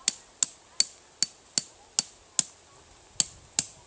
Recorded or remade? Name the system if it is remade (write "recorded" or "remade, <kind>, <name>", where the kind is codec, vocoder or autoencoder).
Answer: recorded